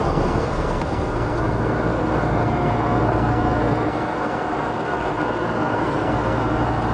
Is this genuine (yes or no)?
no